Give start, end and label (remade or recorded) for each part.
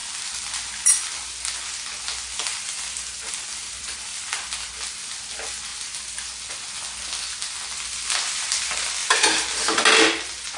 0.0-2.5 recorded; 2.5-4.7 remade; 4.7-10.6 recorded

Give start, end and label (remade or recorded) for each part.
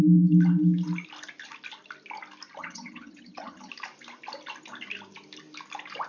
0.0-2.6 recorded; 2.6-3.7 remade; 3.7-6.1 recorded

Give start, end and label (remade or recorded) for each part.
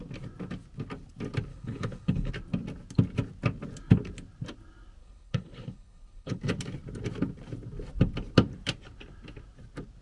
0.0-1.5 recorded; 1.5-2.3 remade; 2.3-5.0 recorded; 5.0-6.4 remade; 6.4-10.0 recorded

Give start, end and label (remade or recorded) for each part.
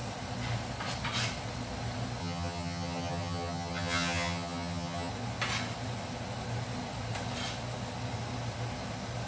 0.0-2.2 recorded; 2.2-5.1 remade; 5.1-9.3 recorded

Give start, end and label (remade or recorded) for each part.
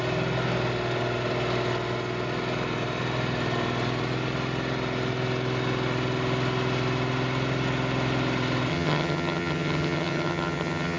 0.0-8.7 recorded; 8.7-11.0 remade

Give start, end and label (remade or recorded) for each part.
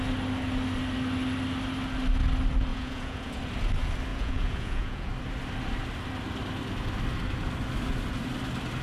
0.0-2.7 recorded; 2.7-3.4 remade; 3.4-4.1 recorded; 4.1-5.1 remade; 5.1-8.8 recorded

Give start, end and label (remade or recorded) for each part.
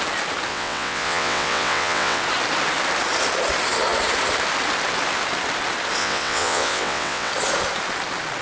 0.0-0.5 recorded; 0.5-2.2 remade; 2.2-6.0 recorded; 6.0-7.3 remade; 7.3-8.4 recorded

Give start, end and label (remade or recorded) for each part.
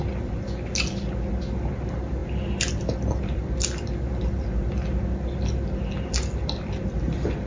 0.0-7.5 recorded